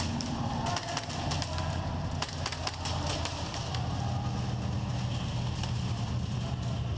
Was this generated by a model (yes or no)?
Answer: no